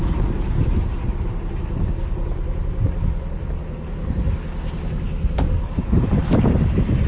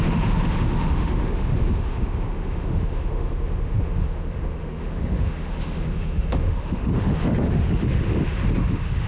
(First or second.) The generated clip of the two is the second